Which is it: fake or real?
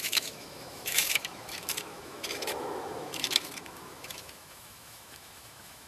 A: fake